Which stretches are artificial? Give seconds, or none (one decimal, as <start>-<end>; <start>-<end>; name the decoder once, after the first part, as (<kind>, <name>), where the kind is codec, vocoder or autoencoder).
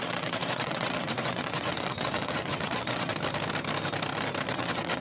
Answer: 0.0-3.1 (vocoder, WaveNeXt); 4.5-5.0